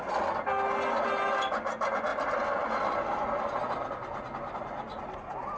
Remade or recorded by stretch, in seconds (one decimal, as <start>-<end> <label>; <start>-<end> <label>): 0.0-5.6 recorded